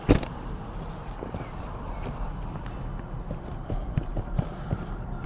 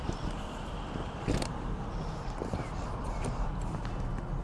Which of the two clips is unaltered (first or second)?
second